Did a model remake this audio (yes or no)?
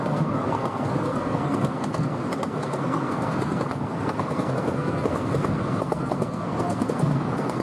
yes